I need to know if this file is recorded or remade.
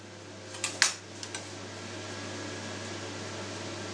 recorded